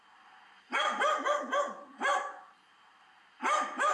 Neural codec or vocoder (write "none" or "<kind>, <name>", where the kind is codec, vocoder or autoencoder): none